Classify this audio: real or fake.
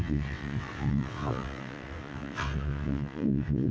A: fake